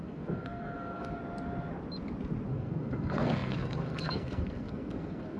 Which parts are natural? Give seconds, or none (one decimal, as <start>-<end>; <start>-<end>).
1.2-2.5